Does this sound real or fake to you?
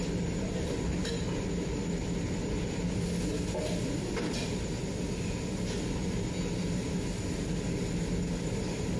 real